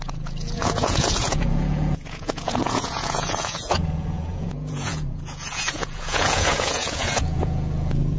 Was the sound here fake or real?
fake